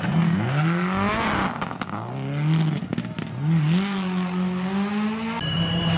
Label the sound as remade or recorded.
recorded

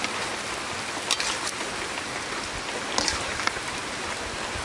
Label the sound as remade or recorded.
recorded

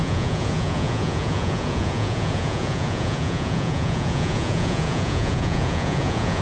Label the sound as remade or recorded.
remade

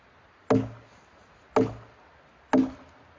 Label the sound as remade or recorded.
recorded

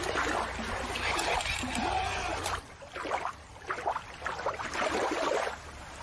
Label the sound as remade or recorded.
recorded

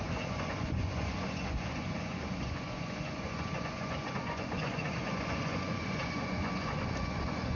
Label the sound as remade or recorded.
remade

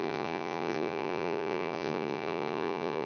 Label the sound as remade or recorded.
remade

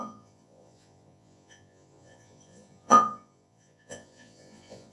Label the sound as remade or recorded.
remade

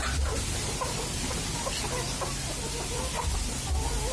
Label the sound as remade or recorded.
recorded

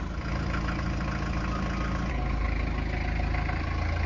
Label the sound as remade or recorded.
recorded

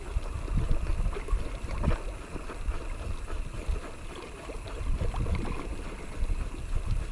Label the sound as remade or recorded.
recorded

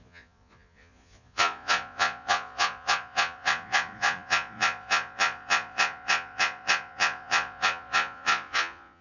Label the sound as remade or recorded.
remade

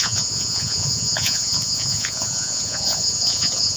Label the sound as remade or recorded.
remade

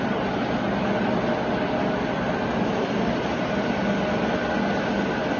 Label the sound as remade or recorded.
recorded